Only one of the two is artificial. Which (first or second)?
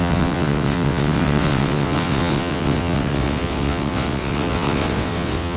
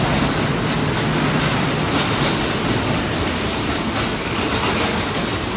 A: first